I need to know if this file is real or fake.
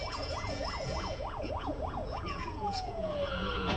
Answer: fake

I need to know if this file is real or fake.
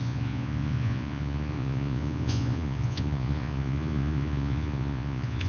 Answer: fake